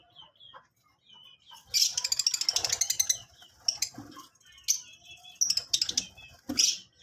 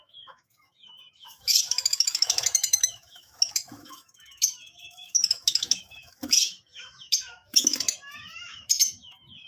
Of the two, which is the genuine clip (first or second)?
first